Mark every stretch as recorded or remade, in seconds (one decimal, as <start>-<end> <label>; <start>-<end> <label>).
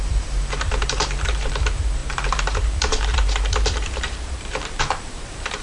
0.0-5.6 remade